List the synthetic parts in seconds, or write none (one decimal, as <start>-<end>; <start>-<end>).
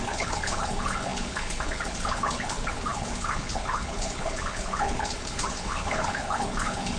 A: 0.0-7.0